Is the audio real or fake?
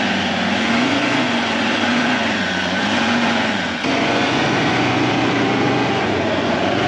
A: fake